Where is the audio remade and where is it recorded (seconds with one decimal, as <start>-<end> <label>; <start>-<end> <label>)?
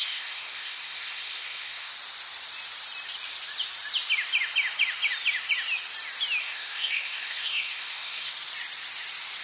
0.0-1.9 remade; 1.9-6.4 recorded; 6.4-8.3 remade; 8.3-9.4 recorded